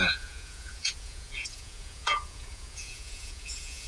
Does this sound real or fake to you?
fake